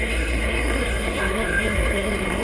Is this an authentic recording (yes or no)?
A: no